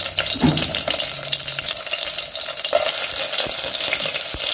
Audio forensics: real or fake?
real